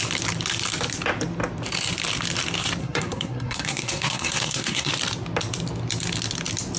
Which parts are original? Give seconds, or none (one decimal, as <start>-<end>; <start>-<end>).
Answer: 0.0-2.8; 4.9-6.8